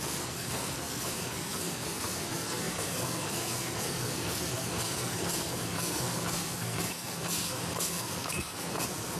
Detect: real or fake fake